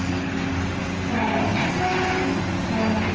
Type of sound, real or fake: real